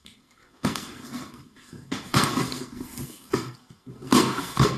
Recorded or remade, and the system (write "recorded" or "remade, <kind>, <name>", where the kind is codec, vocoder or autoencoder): remade, codec, SNAC